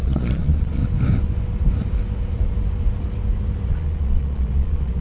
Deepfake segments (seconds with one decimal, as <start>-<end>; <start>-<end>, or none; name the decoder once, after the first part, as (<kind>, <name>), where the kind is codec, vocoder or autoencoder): 0.0-0.8 (vocoder, Vocos); 3.7-5.0